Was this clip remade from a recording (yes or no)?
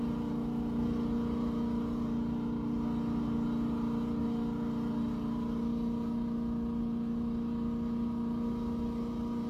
no